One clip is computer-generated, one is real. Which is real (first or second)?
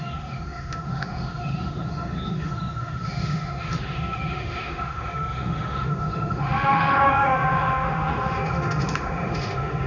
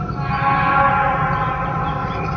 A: second